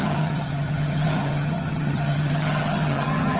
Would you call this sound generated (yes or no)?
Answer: yes